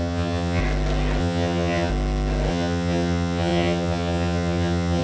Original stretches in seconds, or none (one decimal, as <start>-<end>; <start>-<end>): 0.6-1.2; 1.9-2.5